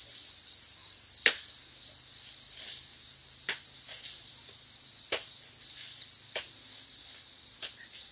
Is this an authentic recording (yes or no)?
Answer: yes